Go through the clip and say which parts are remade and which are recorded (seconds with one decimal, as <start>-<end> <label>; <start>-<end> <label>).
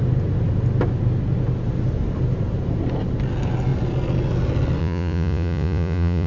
0.0-4.8 recorded; 4.8-6.3 remade